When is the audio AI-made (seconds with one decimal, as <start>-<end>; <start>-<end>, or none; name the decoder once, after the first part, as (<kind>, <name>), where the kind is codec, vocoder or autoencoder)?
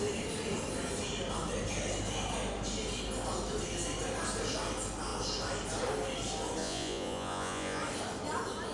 6.6-7.8 (vocoder, Vocos)